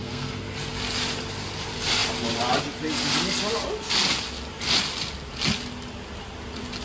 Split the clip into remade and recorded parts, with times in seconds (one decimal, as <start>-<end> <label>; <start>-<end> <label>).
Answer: 0.0-0.5 remade; 0.5-6.8 recorded